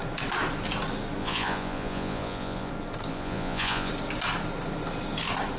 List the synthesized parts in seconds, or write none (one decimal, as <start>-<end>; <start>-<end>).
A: 1.2-2.7; 3.1-3.9